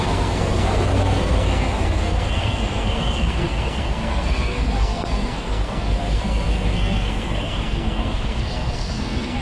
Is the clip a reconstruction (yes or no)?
yes